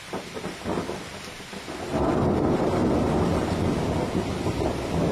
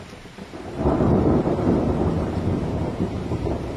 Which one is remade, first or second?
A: second